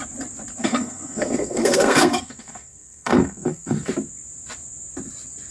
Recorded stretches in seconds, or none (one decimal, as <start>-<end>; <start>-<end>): 0.0-0.6; 3.9-5.5